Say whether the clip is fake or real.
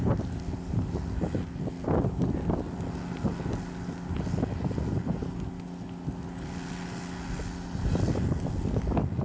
real